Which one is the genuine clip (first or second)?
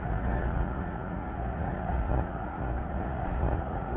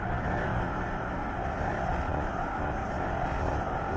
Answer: second